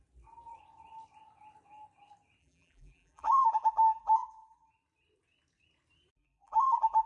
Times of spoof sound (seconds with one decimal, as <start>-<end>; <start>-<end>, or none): 2.4-4.7; 6.1-7.1